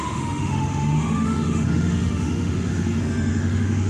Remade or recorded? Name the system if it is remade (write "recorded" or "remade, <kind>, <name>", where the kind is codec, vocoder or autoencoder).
remade, autoencoder, DAC-VAE